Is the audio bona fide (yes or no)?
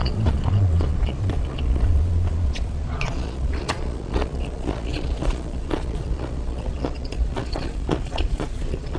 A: no